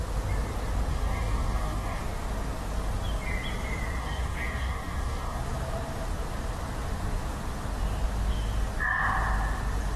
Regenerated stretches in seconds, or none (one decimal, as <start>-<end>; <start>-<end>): 0.9-2.0; 4.0-5.4